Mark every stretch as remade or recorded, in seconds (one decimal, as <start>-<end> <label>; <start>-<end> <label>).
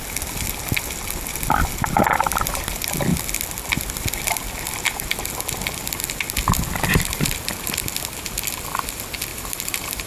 0.0-9.3 recorded; 9.3-10.1 remade